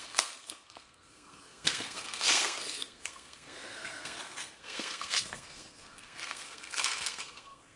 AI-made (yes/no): yes